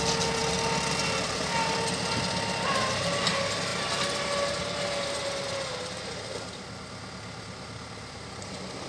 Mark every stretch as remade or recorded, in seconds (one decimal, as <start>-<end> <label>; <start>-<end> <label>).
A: 0.0-8.9 recorded